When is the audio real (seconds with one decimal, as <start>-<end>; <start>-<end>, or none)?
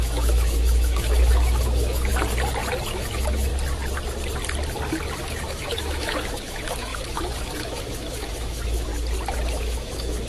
2.1-2.9; 3.5-5.2; 8.9-9.5